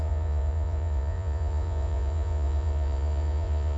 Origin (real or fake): fake